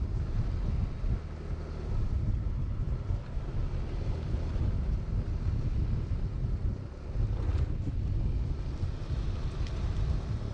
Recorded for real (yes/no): yes